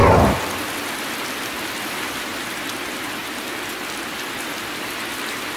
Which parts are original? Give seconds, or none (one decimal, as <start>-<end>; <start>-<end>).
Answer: 0.0-1.8; 3.2-4.5